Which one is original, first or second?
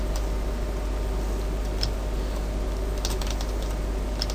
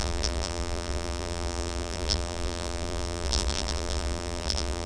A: first